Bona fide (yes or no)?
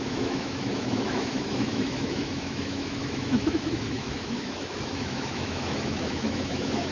no